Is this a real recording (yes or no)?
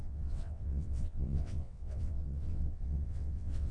no